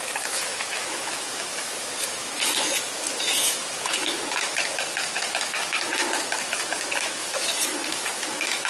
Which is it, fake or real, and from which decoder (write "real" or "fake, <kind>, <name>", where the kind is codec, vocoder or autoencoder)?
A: fake, autoencoder, DAC-VAE